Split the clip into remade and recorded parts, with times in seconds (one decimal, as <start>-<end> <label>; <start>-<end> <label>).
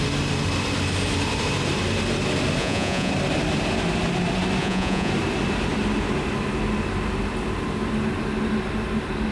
0.0-2.6 recorded; 2.6-3.1 remade; 3.1-4.6 recorded; 4.6-5.1 remade; 5.1-9.3 recorded